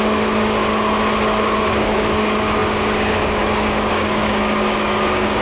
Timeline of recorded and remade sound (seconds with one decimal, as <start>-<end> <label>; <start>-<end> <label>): 0.0-0.7 remade; 0.7-1.4 recorded; 1.4-5.4 remade